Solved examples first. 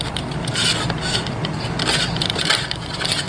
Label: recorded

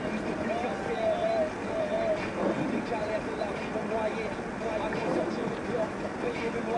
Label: recorded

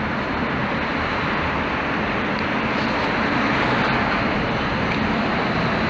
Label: recorded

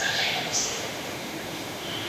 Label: remade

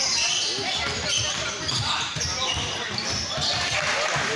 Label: recorded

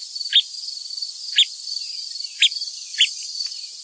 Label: recorded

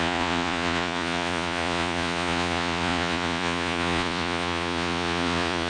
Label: remade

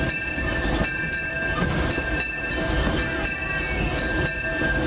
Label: recorded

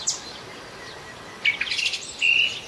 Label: recorded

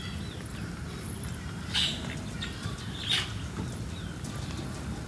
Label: recorded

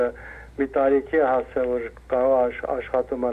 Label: recorded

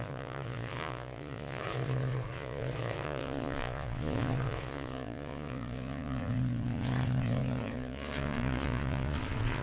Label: remade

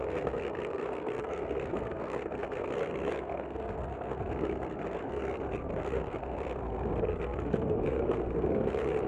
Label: remade